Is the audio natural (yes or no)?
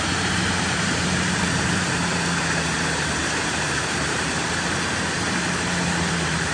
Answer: no